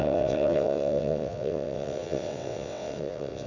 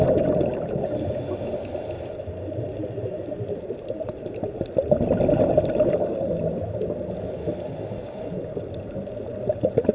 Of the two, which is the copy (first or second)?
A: first